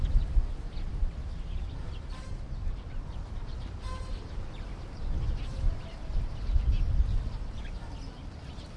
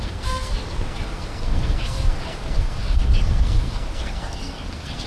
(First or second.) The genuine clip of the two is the first